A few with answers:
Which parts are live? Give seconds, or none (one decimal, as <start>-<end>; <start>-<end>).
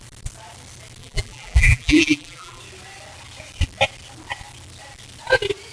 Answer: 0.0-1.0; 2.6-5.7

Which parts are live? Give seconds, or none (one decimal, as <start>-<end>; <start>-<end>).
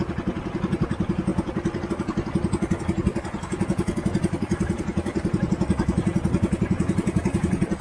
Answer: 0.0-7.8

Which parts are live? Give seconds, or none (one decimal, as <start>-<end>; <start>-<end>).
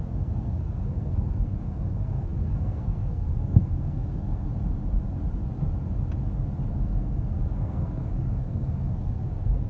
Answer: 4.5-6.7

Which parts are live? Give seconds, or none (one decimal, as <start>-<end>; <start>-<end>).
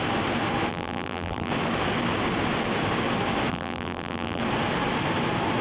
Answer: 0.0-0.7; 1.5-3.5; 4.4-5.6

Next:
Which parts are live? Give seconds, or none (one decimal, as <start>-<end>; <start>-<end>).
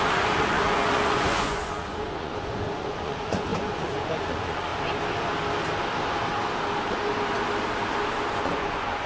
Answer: 4.7-8.3